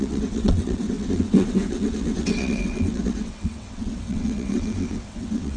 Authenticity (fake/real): fake